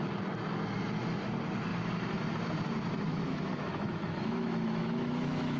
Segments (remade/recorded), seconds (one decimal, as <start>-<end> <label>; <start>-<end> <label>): 0.0-3.1 recorded; 3.1-5.6 remade